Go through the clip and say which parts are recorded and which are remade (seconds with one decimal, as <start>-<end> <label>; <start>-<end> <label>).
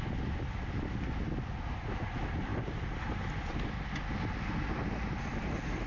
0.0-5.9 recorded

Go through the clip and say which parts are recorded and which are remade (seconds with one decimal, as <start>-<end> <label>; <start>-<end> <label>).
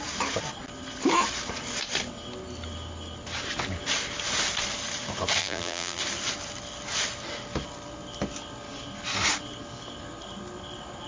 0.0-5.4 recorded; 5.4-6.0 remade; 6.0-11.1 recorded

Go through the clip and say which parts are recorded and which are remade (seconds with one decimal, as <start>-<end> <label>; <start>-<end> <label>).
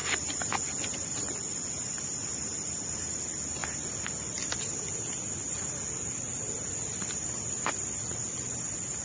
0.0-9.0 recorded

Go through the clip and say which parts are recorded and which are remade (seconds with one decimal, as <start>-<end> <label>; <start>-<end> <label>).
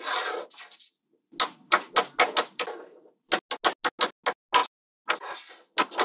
0.0-6.0 recorded